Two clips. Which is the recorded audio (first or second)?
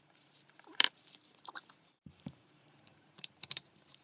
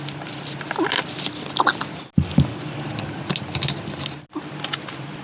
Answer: second